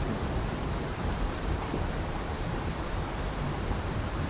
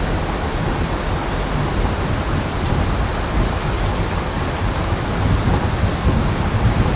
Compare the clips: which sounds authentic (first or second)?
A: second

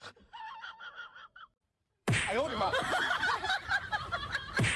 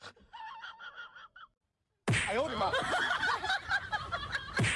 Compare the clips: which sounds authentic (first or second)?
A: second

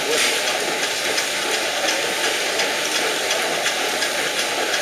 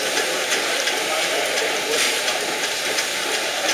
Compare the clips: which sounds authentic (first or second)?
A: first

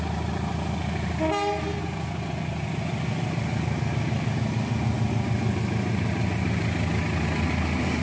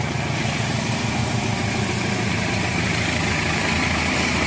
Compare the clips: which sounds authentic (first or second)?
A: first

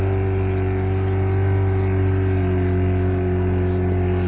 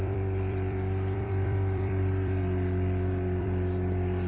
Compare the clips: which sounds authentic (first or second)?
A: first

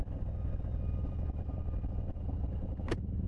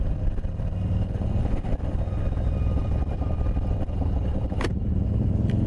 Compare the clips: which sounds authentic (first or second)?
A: first